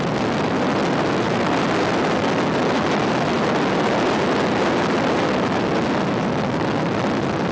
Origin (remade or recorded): recorded